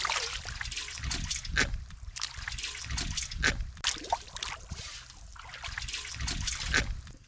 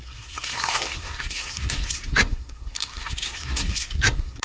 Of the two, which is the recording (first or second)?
first